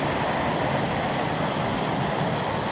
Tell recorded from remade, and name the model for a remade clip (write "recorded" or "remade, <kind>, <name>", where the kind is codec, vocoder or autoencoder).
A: recorded